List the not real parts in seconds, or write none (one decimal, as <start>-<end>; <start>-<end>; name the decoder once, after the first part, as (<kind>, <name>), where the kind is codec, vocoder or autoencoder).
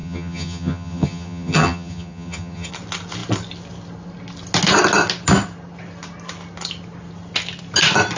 0.0-2.7 (vocoder, HiFi-GAN)